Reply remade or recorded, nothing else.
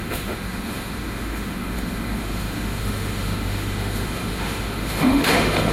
remade